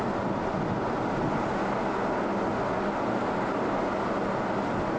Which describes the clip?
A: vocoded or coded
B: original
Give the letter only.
B